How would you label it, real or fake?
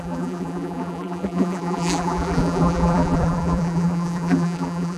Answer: fake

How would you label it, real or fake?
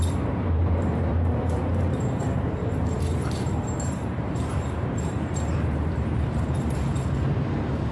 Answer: fake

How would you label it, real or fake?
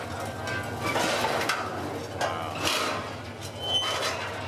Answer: real